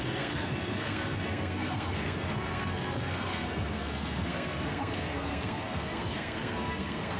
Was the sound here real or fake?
fake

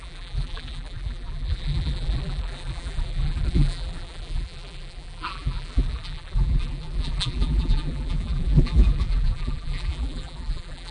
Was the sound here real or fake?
fake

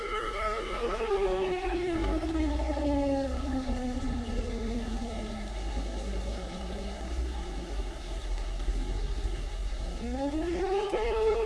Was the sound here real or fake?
fake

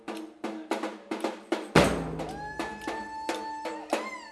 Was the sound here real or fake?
real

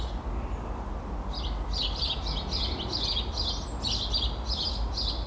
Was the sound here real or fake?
real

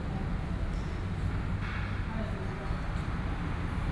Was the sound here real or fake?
real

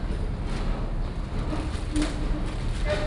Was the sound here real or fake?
real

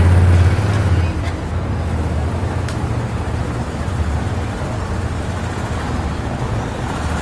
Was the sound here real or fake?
real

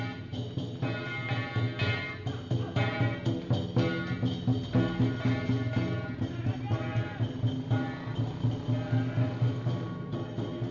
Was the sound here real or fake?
real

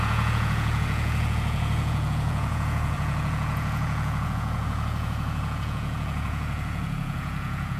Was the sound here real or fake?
fake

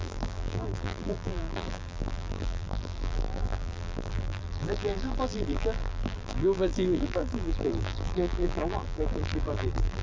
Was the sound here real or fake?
fake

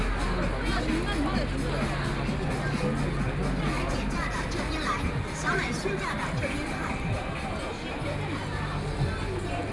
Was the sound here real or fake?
real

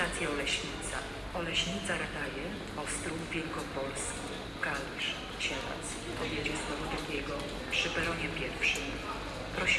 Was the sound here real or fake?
real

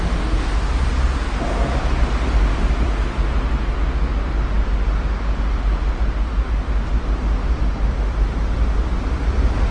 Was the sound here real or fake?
real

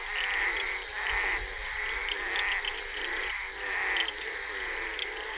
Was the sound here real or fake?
real